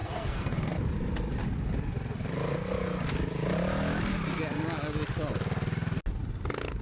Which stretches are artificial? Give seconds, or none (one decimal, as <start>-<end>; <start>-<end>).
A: 0.0-0.7